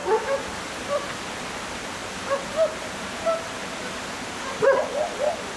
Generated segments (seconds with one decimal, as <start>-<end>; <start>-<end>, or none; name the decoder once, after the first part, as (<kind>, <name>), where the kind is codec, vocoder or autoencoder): none

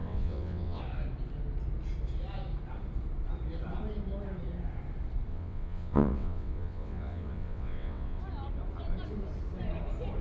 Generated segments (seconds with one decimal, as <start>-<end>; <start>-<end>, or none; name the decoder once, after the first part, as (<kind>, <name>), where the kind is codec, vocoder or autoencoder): 0.0-0.8 (vocoder, WaveNeXt); 5.3-8.2